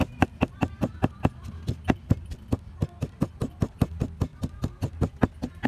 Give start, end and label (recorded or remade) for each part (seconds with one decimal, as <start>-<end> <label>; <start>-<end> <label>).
0.0-5.7 recorded